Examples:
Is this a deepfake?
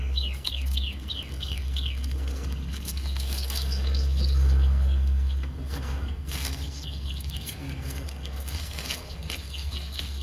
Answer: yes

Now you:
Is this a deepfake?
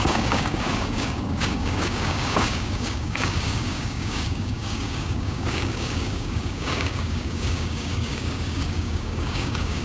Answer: yes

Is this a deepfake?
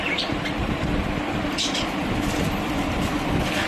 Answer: yes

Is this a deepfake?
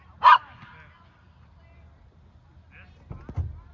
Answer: no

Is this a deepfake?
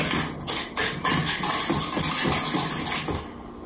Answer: no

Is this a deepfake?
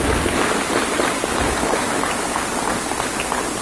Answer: no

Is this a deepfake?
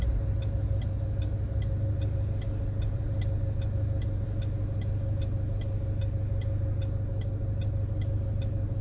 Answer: no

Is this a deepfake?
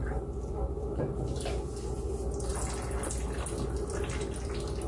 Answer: no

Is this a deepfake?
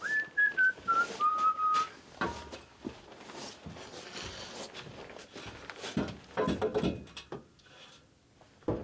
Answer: no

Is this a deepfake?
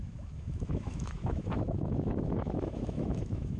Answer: yes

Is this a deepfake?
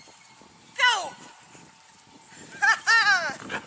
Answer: no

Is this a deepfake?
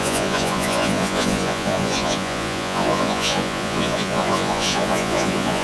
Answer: yes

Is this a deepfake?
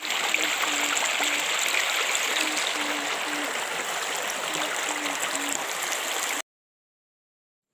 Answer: no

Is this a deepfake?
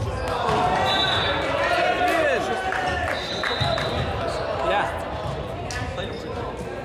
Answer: no